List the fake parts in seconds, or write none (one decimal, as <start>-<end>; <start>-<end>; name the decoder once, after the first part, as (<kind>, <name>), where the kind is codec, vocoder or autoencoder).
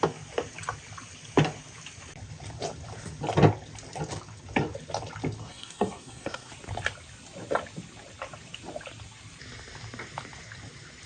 5.4-6.5 (codec, SNAC)